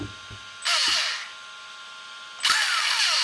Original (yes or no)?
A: yes